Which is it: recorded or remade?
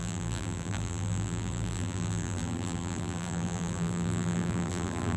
remade